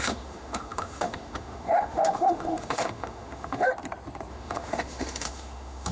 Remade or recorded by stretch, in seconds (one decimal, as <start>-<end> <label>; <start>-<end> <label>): 0.0-3.7 remade; 3.7-4.3 recorded; 4.3-5.9 remade